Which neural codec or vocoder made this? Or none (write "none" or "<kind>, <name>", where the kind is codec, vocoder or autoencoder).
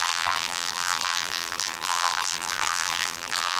vocoder, BigVGAN v2